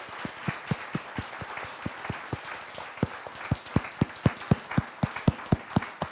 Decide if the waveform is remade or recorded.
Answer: recorded